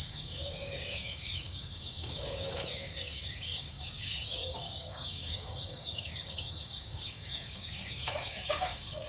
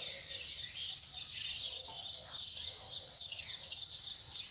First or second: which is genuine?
second